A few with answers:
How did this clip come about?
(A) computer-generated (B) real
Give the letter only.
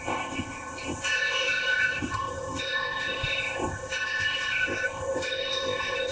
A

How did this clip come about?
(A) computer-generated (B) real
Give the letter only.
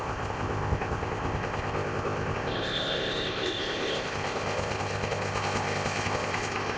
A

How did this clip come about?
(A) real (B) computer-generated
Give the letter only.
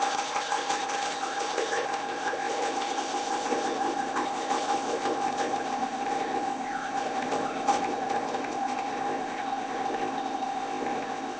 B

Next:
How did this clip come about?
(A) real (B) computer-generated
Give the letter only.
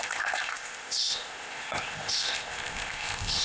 B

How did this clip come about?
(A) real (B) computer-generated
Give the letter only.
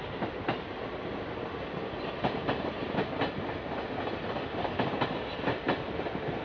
A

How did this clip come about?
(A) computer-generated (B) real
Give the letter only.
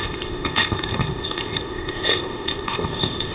A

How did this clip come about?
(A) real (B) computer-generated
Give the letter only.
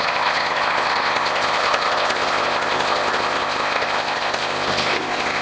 B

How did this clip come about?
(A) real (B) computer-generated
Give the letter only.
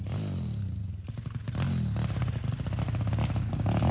A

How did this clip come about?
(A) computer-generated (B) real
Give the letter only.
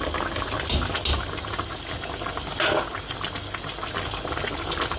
B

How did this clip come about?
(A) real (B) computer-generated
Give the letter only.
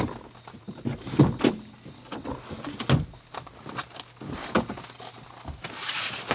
A